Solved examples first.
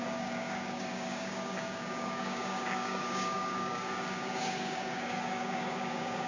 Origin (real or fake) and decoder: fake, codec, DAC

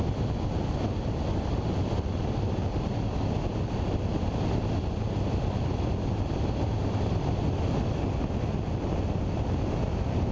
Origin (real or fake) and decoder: real